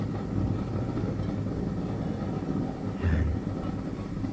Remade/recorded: recorded